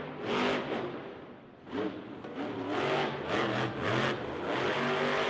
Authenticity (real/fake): real